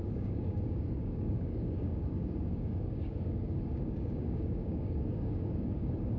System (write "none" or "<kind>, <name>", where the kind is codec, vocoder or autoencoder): codec, DAC